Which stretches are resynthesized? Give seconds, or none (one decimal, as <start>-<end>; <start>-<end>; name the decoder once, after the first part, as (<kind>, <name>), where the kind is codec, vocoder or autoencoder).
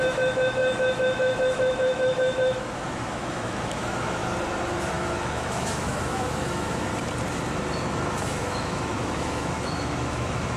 0.0-4.2 (autoencoder, DAC-VAE); 4.9-6.9; 7.8-10.6